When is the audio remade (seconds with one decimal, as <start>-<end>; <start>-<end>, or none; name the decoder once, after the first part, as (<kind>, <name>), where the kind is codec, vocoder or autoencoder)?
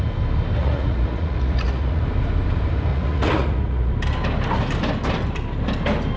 0.6-2.0 (vocoder, Vocos); 2.9-3.9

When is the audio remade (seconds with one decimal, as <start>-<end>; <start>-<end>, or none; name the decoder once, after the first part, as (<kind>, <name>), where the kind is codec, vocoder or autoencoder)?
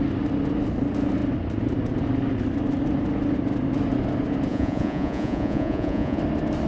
4.5-6.2 (vocoder, Vocos)